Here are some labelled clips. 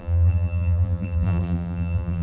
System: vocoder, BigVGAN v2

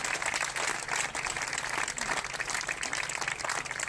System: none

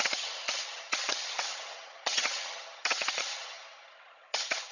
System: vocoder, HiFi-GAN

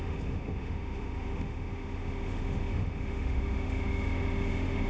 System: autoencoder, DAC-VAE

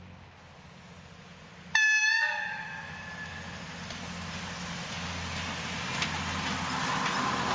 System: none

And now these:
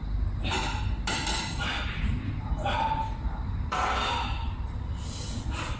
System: vocoder, BigVGAN v2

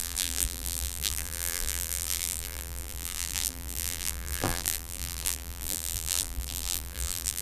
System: vocoder, BigVGAN v2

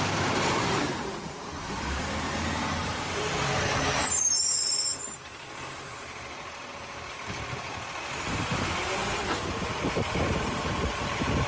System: vocoder, BigVGAN v2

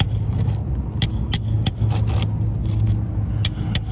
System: none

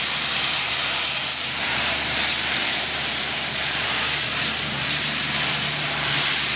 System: vocoder, BigVGAN v2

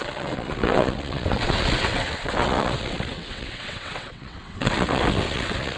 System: vocoder, WaveNeXt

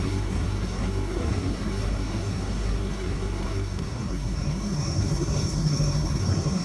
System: codec, SNAC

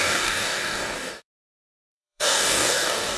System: codec, DAC